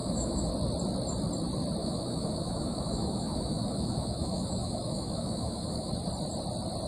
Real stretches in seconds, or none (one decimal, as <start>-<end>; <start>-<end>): 0.5-1.8; 5.9-6.9

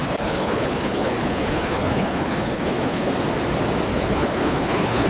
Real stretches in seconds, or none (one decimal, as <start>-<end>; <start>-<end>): 3.1-3.9

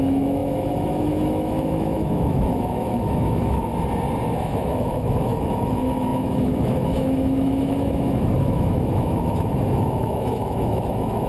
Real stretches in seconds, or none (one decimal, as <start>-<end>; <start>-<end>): 3.7-4.4

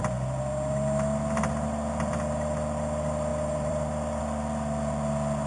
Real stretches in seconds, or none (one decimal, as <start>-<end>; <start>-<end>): 0.0-3.3; 4.2-5.5